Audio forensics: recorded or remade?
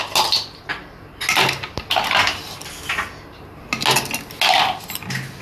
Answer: recorded